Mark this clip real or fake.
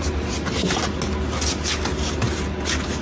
real